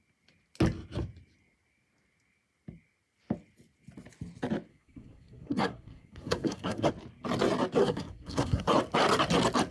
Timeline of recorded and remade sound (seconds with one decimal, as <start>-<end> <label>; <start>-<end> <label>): 0.0-4.7 recorded; 4.7-6.9 remade; 6.9-7.8 recorded; 7.8-8.7 remade; 8.7-9.7 recorded